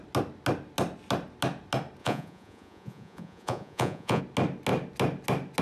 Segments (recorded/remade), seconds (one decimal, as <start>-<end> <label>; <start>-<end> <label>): 0.0-2.0 recorded; 2.0-4.2 remade; 4.2-5.6 recorded